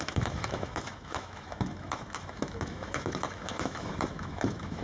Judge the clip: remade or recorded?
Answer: remade